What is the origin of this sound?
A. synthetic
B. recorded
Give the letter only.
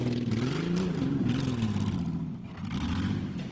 B